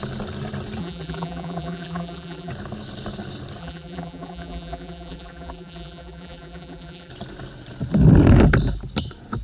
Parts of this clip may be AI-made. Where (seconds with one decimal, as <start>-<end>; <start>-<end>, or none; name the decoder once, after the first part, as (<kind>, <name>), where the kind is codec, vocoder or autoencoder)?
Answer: 0.8-2.5 (vocoder, BigVGAN v2); 3.6-7.1